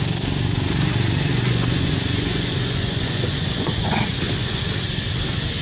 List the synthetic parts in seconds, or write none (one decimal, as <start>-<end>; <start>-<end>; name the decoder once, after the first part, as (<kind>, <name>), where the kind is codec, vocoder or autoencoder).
1.3-4.6 (vocoder, Vocos)